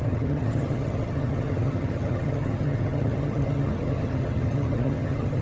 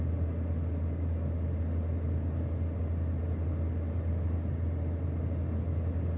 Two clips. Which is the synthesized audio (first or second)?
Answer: first